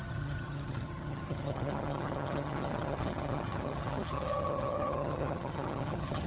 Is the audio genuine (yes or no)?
no